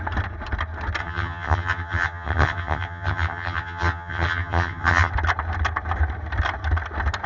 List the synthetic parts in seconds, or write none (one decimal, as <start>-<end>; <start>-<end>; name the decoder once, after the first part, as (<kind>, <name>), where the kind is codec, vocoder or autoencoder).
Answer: 1.0-5.1 (vocoder, HiFi-GAN)